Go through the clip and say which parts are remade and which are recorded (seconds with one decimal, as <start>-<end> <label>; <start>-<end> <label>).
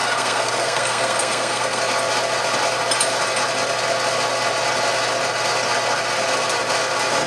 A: 0.0-1.8 remade; 1.8-7.3 recorded